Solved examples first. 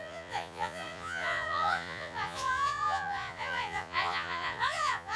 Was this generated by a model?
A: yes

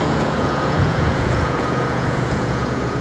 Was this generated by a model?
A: yes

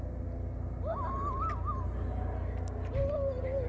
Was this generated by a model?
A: no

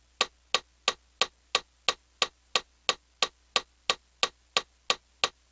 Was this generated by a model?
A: no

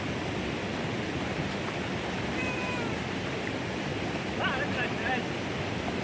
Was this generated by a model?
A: no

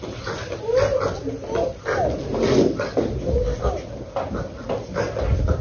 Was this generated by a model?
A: no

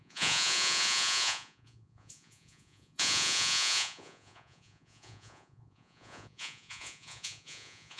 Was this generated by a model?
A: yes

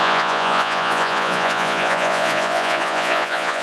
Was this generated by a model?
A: yes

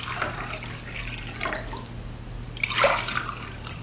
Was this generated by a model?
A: no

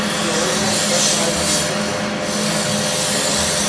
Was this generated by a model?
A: no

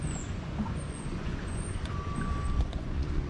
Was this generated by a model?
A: yes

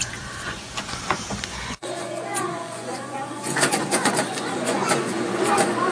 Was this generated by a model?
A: yes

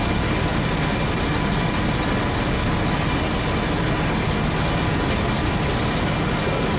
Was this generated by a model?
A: no